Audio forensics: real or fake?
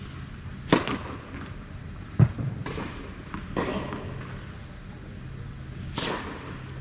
real